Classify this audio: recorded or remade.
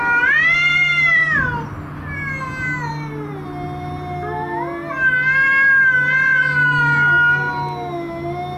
recorded